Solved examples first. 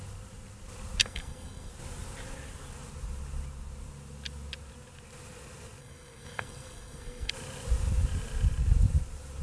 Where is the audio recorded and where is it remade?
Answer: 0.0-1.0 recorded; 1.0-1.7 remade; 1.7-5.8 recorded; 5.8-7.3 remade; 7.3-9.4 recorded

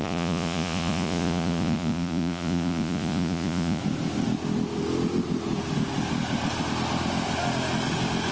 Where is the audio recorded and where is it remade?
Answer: 0.0-3.8 remade; 3.8-8.3 recorded

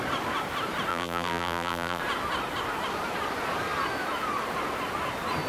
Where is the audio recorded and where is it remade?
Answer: 0.0-0.9 recorded; 0.9-2.0 remade; 2.0-5.5 recorded

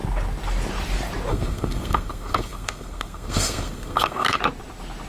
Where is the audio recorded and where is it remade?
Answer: 0.0-1.3 recorded; 1.3-4.4 remade; 4.4-5.1 recorded

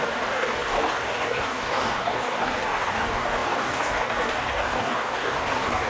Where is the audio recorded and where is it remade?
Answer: 0.0-5.9 remade

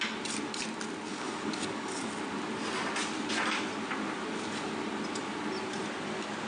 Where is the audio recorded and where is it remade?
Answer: 0.0-1.1 recorded; 1.1-2.1 remade; 2.1-6.5 recorded

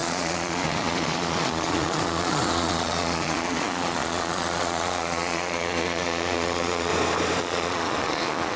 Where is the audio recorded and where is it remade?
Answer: 0.0-6.9 remade; 6.9-7.4 recorded; 7.4-8.6 remade